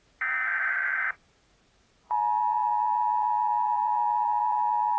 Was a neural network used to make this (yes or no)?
yes